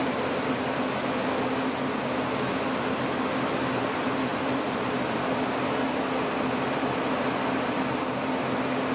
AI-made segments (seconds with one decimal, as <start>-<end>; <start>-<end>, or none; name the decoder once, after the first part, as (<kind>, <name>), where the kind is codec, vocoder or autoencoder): 0.0-0.6 (vocoder, BigVGAN v2); 4.3-4.8